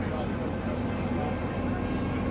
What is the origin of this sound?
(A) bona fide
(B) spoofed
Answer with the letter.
A